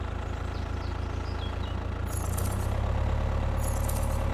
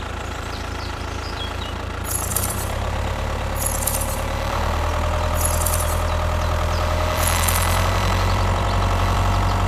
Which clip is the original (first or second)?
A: first